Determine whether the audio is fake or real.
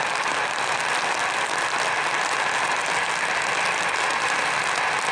real